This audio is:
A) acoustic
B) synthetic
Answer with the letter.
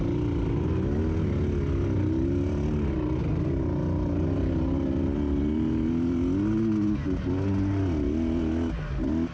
A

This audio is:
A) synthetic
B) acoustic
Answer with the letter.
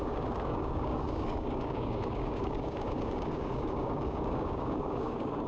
A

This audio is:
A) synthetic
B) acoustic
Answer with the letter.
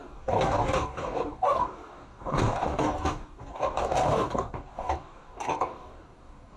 A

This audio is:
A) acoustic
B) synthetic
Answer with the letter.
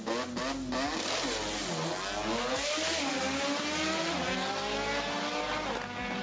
A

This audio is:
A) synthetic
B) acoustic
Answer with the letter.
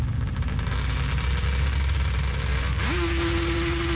B